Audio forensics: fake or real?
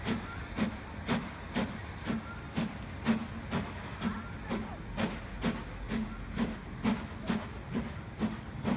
real